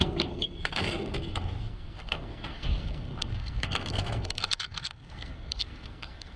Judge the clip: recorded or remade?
remade